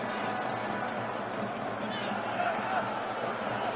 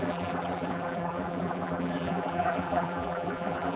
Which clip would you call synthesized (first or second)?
second